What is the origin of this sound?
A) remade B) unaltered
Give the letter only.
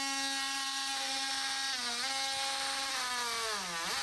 B